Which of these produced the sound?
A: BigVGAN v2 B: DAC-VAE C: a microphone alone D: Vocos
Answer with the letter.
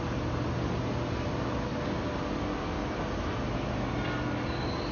C